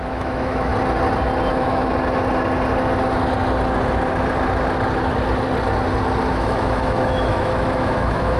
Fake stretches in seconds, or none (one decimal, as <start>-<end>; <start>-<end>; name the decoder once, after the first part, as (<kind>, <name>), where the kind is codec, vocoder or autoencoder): 0.0-0.7 (autoencoder, DAC-VAE); 1.5-1.9; 6.3-8.4